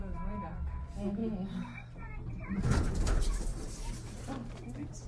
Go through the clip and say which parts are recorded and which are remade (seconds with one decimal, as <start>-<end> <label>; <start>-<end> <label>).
0.0-3.5 recorded; 3.5-4.2 remade; 4.2-5.1 recorded

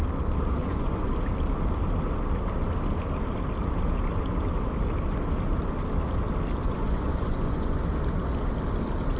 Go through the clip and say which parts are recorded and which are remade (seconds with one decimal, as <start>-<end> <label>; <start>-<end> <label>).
0.0-0.6 recorded; 0.6-1.1 remade; 1.1-6.7 recorded; 6.7-7.8 remade; 7.8-9.2 recorded

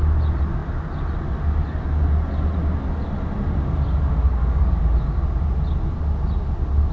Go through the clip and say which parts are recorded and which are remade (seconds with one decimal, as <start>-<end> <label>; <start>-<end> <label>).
0.0-4.3 recorded; 4.3-4.8 remade; 4.8-6.9 recorded